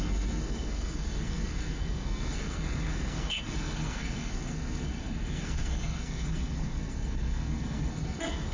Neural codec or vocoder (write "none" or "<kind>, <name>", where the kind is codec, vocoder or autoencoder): codec, SNAC